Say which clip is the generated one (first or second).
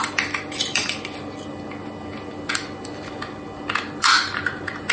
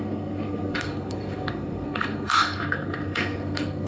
second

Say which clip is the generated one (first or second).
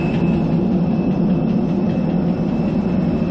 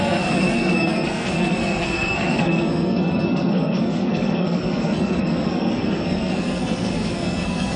second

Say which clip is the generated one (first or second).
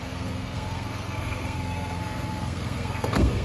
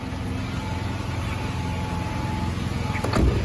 first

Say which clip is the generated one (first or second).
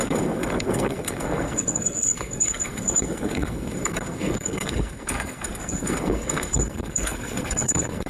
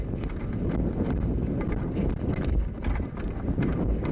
first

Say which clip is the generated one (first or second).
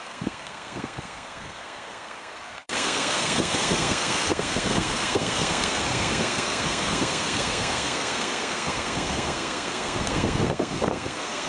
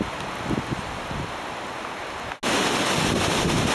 first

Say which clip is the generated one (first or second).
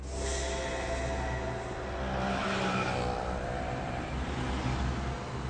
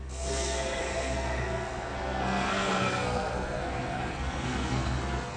second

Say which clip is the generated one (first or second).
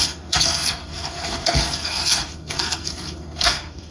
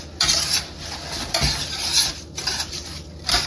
first